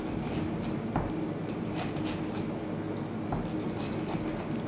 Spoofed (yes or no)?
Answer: no